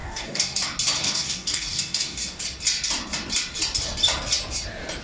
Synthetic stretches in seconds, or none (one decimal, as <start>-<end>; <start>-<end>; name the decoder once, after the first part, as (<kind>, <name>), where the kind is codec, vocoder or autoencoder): 0.0-0.6 (codec, DAC); 1.0-2.4

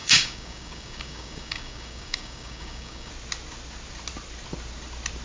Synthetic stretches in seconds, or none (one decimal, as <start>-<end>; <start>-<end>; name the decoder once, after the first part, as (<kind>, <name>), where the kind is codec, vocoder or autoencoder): 0.0-3.1 (codec, DAC)

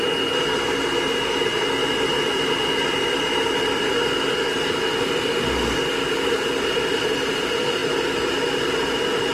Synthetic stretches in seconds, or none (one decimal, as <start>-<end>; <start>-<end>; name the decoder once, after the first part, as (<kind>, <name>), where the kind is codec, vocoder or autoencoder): none

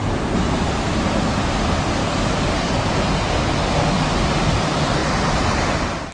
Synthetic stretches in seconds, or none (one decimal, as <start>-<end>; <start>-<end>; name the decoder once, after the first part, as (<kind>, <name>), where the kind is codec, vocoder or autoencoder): 2.0-2.9 (codec, DAC)

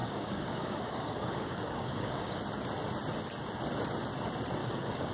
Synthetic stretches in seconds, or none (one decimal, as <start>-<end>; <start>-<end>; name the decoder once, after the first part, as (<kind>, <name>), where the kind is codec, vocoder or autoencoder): 0.0-2.4 (codec, DAC); 4.6-5.1

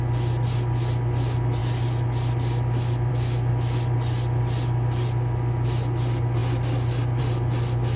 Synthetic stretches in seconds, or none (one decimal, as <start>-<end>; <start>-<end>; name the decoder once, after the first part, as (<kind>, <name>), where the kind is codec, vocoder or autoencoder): none